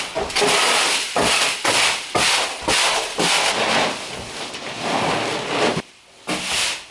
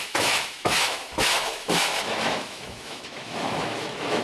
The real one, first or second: first